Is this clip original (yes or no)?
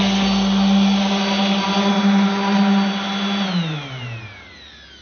yes